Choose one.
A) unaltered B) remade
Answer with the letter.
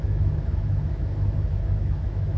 B